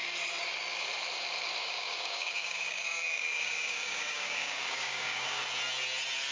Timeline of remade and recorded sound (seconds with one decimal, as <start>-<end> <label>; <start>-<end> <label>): 0.0-1.6 recorded; 1.6-5.4 remade; 5.4-6.3 recorded